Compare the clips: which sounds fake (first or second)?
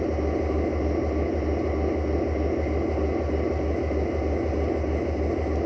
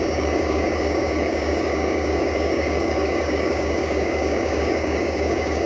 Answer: second